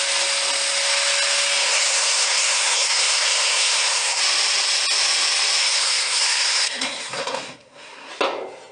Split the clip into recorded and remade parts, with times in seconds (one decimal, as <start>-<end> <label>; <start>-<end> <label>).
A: 0.0-1.6 recorded; 1.6-4.2 remade; 4.2-5.6 recorded; 5.6-8.1 remade; 8.1-8.7 recorded